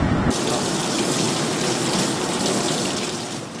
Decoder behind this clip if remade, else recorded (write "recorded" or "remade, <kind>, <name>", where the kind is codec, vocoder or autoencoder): recorded